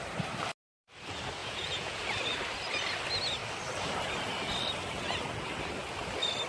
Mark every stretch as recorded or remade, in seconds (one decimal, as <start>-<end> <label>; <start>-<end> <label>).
0.0-1.4 recorded; 1.4-2.0 remade; 2.0-6.5 recorded